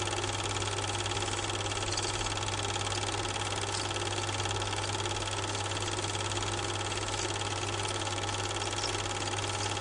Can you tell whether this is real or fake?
real